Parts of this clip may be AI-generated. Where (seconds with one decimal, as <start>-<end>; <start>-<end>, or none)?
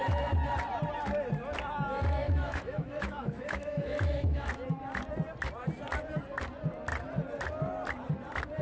2.2-4.5